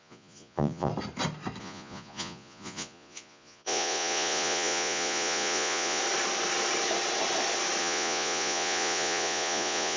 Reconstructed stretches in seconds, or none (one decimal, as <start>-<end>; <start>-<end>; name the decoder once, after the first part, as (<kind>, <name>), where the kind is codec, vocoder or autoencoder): 0.0-0.9 (vocoder, Vocos); 1.6-6.0; 7.8-10.0